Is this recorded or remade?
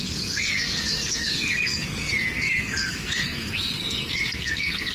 remade